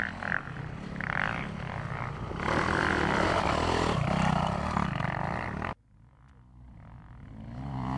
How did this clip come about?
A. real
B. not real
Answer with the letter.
A